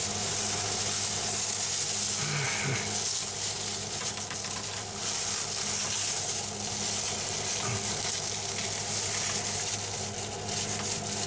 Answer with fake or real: real